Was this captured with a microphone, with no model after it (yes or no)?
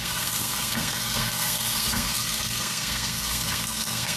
no